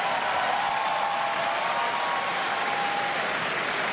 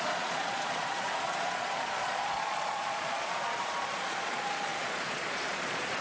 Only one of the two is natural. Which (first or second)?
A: first